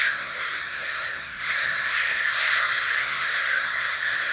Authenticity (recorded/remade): remade